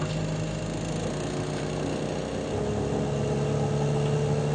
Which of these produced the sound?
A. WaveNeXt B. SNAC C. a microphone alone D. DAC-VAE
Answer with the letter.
C